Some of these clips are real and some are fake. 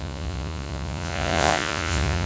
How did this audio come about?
fake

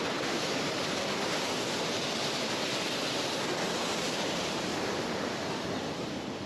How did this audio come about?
real